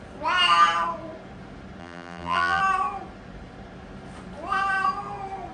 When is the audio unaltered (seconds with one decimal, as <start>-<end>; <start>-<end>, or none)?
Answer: 0.0-1.8; 2.6-5.5